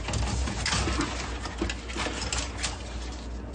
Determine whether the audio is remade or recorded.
recorded